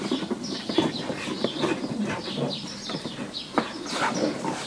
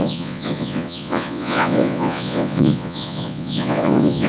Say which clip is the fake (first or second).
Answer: second